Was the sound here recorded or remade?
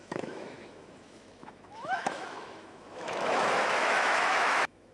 remade